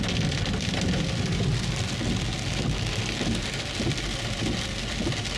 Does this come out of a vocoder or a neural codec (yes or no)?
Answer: no